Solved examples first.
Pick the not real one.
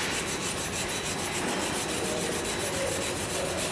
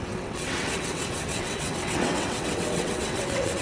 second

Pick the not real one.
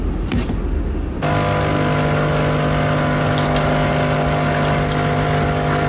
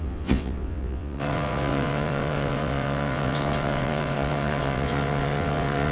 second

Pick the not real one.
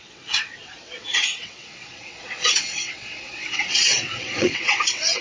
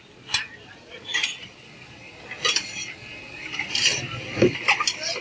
first